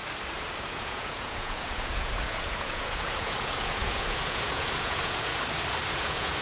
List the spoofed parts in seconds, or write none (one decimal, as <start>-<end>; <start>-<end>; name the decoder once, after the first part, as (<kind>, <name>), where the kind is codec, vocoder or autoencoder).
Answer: 0.6-5.3 (vocoder, Vocos); 5.9-6.4